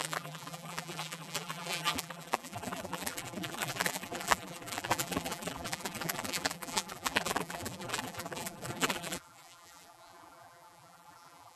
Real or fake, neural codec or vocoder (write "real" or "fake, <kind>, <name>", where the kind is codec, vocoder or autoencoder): fake, vocoder, BigVGAN v2